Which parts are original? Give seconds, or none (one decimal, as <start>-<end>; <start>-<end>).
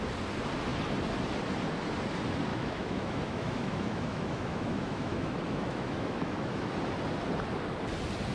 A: 0.0-2.5; 6.7-8.3